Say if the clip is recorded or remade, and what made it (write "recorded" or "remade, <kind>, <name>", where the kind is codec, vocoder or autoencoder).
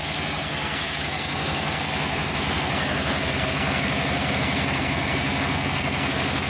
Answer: remade, codec, SNAC